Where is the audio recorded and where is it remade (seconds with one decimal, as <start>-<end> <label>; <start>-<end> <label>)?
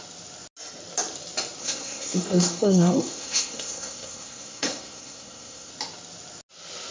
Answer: 0.0-1.6 recorded; 1.6-5.7 remade; 5.7-6.9 recorded